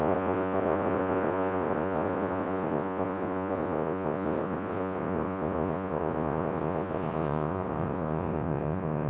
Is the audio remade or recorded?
remade